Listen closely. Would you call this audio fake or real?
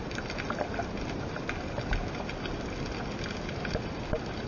real